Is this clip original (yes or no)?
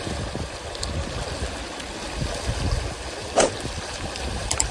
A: yes